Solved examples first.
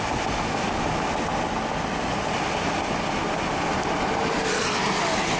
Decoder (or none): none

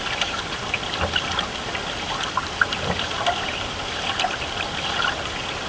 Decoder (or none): none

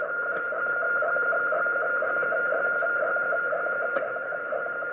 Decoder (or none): none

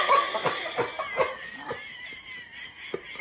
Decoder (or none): none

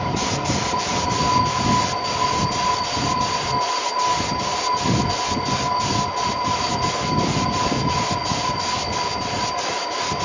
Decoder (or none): none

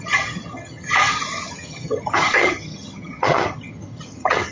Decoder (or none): vocoder, HiFi-GAN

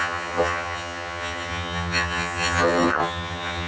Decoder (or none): vocoder, HiFi-GAN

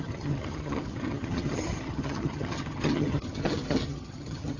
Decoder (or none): vocoder, HiFi-GAN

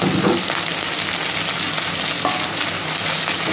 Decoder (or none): none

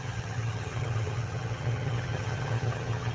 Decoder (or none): vocoder, HiFi-GAN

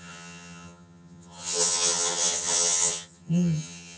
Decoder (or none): vocoder, HiFi-GAN